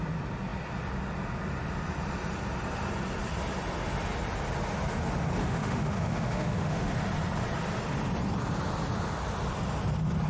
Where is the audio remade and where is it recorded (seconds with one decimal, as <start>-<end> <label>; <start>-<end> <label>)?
0.0-5.4 recorded; 5.4-6.9 remade; 6.9-10.3 recorded